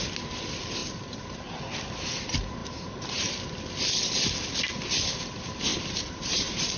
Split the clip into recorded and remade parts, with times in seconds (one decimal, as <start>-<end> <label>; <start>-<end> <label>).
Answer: 0.0-0.8 recorded; 0.8-1.5 remade; 1.5-2.6 recorded; 2.6-3.5 remade; 3.5-5.7 recorded; 5.7-6.8 remade